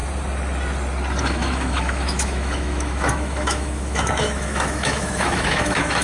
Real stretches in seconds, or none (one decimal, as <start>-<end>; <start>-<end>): 0.0-1.2